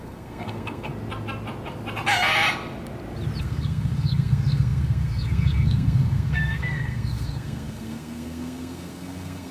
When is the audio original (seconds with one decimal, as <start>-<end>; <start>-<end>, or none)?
0.9-3.4